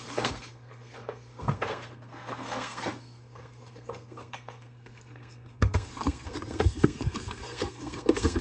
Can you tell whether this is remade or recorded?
remade